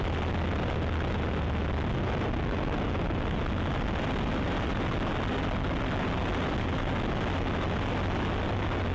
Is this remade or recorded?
recorded